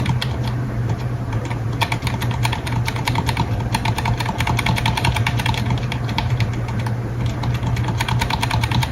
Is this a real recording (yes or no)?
no